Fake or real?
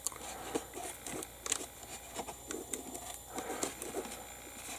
real